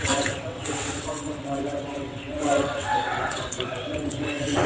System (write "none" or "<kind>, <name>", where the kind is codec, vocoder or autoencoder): vocoder, WaveNeXt